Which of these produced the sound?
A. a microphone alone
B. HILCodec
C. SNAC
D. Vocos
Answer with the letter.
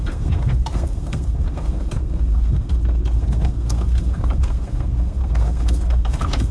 C